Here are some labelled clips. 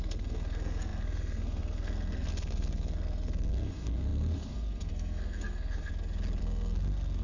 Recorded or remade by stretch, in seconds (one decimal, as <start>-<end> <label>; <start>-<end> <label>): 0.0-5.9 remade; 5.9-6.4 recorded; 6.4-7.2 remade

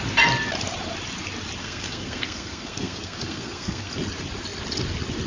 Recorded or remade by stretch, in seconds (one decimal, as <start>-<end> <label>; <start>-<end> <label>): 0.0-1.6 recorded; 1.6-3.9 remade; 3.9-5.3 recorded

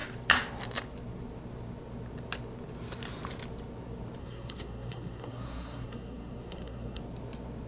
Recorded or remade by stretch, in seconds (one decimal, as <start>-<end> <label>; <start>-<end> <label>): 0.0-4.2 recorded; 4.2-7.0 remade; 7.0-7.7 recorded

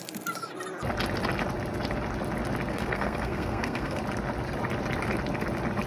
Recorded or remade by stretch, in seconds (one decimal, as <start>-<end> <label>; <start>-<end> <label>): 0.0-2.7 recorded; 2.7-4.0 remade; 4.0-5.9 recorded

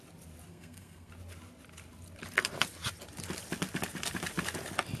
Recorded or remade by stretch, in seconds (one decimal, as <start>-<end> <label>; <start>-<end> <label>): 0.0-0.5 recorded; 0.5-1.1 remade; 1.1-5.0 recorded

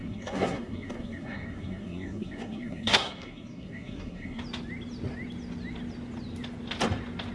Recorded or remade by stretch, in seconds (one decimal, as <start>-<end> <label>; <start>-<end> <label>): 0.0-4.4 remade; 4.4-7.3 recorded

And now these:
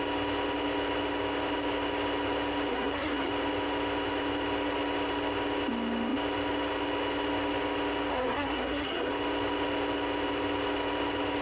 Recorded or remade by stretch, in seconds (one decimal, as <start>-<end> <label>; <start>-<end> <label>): 0.0-2.7 recorded; 2.7-3.3 remade; 3.3-8.1 recorded; 8.1-9.1 remade; 9.1-11.4 recorded

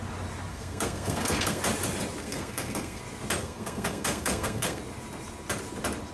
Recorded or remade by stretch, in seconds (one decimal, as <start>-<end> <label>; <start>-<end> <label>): 0.0-0.5 recorded; 0.5-1.6 remade; 1.6-2.2 recorded; 2.2-3.0 remade; 3.0-3.4 recorded; 3.4-4.8 remade; 4.8-6.1 recorded